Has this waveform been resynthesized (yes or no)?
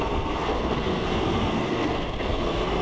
yes